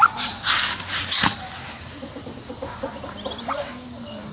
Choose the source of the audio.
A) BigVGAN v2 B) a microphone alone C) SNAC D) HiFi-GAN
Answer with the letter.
B